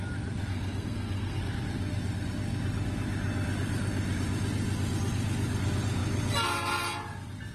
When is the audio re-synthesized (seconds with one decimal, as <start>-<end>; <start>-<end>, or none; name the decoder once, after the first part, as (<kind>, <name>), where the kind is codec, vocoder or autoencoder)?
0.5-1.4 (codec, SNAC)